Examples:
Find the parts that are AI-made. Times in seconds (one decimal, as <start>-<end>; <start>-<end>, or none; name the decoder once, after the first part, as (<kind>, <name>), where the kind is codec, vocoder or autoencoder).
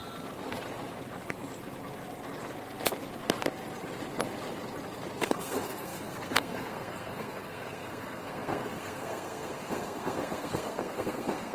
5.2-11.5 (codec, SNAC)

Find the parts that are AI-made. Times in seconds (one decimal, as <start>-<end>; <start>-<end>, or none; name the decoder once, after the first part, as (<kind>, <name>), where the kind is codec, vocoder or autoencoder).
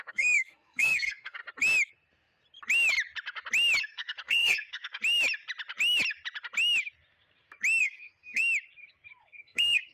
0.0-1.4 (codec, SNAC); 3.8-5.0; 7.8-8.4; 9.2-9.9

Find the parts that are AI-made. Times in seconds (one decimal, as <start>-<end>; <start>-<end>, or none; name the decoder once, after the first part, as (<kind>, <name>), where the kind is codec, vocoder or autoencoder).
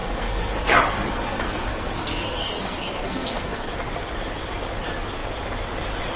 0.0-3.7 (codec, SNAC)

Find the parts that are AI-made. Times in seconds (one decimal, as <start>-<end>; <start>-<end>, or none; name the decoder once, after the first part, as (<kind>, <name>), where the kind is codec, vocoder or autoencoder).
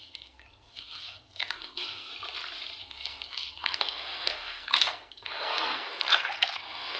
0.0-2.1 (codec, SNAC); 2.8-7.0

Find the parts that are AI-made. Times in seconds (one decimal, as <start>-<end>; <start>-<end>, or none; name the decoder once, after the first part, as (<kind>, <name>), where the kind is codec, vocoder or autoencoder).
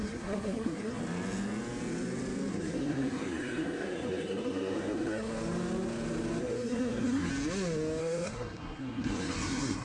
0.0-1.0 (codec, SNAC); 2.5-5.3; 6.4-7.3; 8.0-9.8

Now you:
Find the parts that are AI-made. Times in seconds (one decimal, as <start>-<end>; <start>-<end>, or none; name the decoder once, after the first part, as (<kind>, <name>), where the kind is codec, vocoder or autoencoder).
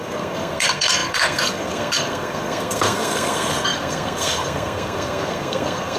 0.0-6.0 (codec, SNAC)